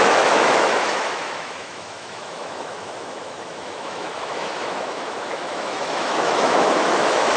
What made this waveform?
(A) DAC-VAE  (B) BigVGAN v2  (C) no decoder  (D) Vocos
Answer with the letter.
A